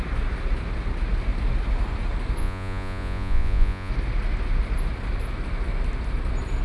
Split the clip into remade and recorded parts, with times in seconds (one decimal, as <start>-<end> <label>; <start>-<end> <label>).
0.0-2.4 recorded; 2.4-3.9 remade; 3.9-6.6 recorded